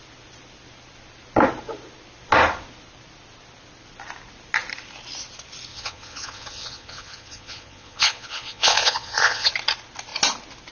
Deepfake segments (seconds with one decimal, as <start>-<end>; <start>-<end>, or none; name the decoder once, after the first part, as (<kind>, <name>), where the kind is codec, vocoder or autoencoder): 5.7-9.5 (vocoder, Vocos)

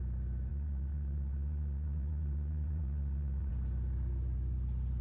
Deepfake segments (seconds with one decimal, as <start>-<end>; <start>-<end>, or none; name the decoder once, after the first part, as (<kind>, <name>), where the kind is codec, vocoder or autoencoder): 0.5-3.5 (vocoder, WaveNeXt)

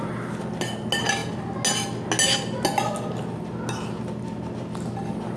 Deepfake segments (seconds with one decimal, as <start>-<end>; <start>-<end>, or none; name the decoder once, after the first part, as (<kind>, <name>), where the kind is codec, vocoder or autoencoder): none

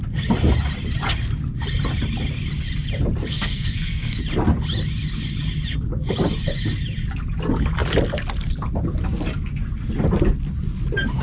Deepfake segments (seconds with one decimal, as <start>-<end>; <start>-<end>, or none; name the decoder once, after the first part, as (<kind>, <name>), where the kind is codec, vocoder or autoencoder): 3.3-4.2 (codec, SNAC)